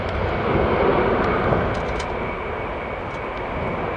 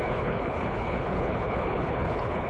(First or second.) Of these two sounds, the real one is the first